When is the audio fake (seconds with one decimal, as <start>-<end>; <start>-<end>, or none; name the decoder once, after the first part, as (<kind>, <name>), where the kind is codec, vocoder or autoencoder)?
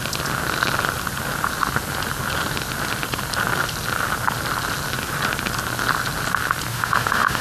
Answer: 6.7-7.4 (autoencoder, DAC-VAE)